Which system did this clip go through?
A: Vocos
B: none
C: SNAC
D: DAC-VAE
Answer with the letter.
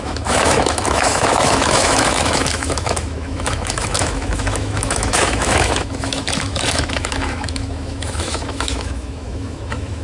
D